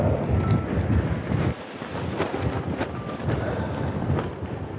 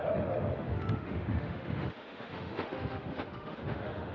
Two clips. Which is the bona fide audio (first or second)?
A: first